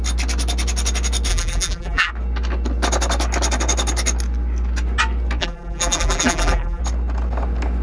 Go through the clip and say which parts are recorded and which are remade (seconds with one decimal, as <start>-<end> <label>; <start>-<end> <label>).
0.0-1.3 recorded; 1.3-2.1 remade; 2.1-5.4 recorded; 5.4-6.8 remade; 6.8-7.8 recorded